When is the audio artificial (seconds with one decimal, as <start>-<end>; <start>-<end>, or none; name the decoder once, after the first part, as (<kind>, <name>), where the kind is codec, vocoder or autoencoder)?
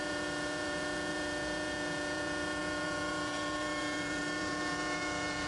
0.0-5.5 (vocoder, Vocos)